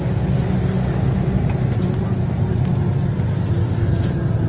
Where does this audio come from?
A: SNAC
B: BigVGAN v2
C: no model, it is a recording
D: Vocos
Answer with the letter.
C